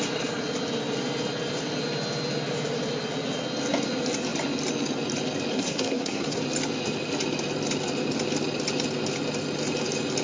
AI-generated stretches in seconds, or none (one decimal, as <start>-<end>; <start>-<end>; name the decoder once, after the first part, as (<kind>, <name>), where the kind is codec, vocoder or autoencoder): 5.5-6.4 (codec, SNAC)